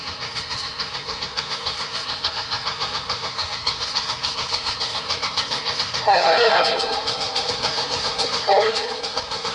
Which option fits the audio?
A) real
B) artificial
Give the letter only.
B